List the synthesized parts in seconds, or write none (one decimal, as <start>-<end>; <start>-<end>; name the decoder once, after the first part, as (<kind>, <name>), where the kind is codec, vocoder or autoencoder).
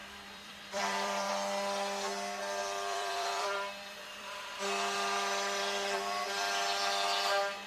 0.0-1.3 (vocoder, BigVGAN v2); 2.6-6.2